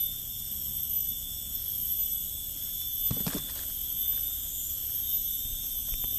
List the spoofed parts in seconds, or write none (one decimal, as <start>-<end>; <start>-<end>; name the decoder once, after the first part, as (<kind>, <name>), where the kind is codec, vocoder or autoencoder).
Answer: none